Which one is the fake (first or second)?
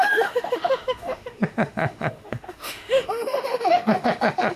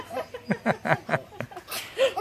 first